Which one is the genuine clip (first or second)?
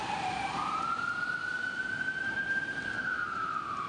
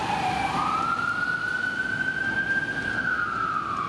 second